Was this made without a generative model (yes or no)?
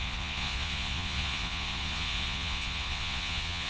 no